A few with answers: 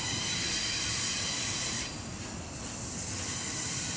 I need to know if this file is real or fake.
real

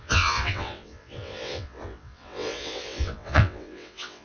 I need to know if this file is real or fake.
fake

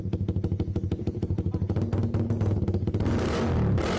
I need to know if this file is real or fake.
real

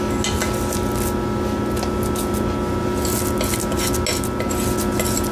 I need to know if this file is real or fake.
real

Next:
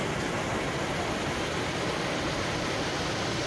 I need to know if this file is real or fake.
real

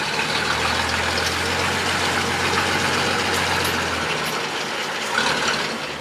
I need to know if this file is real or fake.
real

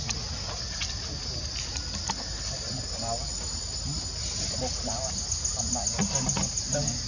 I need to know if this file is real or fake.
real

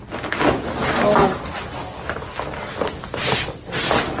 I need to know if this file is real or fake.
real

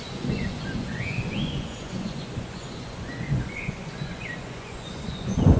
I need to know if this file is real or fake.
fake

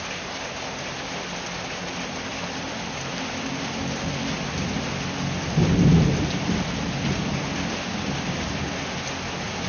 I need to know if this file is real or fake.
real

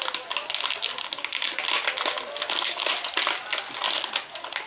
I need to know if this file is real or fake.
real